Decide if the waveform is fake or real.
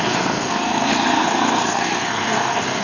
fake